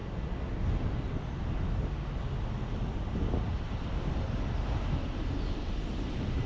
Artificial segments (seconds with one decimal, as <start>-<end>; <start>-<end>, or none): none